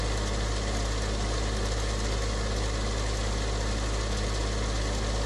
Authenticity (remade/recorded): recorded